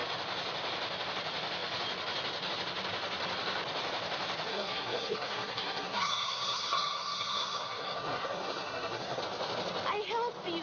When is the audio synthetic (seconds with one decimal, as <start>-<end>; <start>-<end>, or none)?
4.5-9.2